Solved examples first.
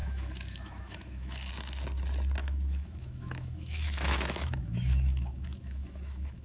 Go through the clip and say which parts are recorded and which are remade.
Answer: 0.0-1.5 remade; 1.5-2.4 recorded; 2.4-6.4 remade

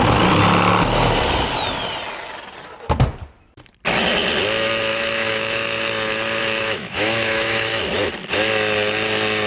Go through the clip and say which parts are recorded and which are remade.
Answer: 0.0-4.9 recorded; 4.9-5.9 remade; 5.9-6.4 recorded; 6.4-7.8 remade; 7.8-9.5 recorded

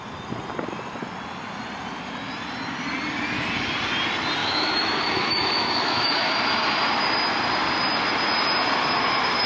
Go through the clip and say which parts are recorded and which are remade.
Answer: 0.0-4.4 recorded; 4.4-6.3 remade; 6.3-9.5 recorded

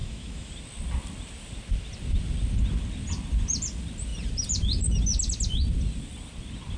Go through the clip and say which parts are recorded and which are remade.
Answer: 0.0-0.5 remade; 0.5-6.8 recorded

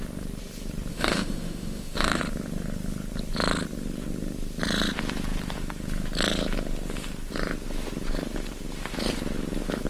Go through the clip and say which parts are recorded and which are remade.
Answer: 0.0-0.9 recorded; 0.9-2.2 remade; 2.2-9.9 recorded

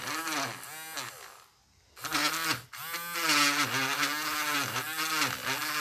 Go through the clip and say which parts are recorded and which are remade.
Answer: 0.0-5.8 recorded

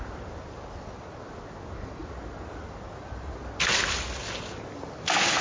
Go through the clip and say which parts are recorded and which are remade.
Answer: 0.0-5.4 recorded

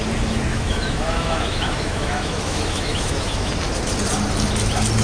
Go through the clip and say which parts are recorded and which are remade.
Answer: 0.0-0.5 recorded; 0.5-3.5 remade; 3.5-5.0 recorded